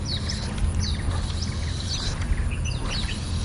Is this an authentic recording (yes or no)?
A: yes